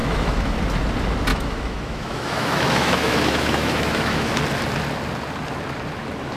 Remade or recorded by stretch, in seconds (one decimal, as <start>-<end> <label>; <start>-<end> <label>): 0.0-0.6 remade; 0.6-1.3 recorded; 1.3-4.4 remade; 4.4-6.4 recorded